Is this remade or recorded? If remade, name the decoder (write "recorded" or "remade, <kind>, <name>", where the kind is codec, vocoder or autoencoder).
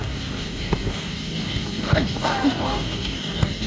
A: remade, codec, DAC